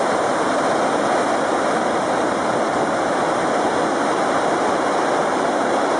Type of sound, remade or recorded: recorded